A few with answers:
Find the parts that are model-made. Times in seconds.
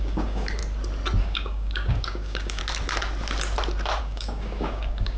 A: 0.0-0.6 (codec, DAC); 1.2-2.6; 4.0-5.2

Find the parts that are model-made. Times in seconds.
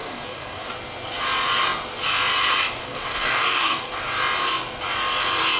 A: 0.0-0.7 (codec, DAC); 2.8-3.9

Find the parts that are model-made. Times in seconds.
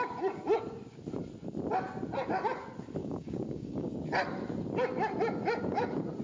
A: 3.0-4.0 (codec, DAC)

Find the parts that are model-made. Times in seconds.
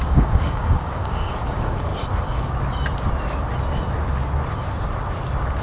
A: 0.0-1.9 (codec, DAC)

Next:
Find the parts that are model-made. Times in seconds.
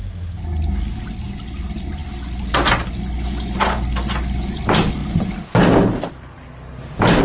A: none